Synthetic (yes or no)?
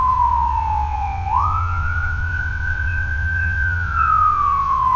yes